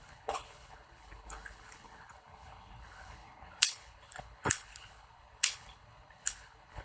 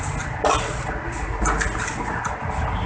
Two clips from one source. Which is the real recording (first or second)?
second